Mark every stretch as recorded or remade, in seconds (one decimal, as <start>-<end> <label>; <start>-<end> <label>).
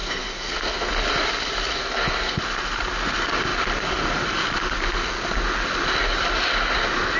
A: 0.0-0.9 remade; 0.9-1.8 recorded; 1.8-2.4 remade; 2.4-7.2 recorded